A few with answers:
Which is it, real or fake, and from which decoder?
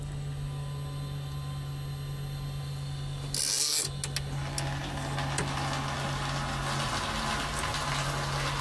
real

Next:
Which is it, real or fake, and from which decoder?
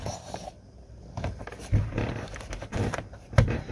fake, vocoder, BigVGAN v2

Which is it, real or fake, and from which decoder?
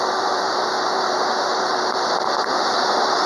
fake, vocoder, BigVGAN v2